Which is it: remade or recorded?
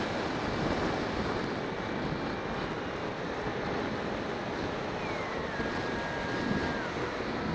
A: recorded